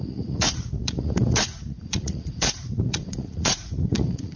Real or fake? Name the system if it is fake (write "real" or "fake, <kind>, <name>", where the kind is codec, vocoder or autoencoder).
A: fake, vocoder, Vocos